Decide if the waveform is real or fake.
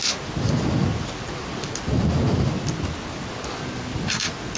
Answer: real